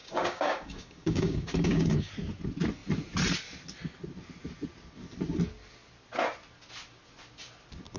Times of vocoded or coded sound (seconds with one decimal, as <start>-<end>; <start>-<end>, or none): 0.0-2.1